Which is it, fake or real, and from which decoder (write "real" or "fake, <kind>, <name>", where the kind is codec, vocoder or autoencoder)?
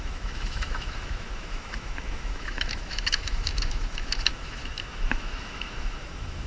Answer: fake, autoencoder, DAC-VAE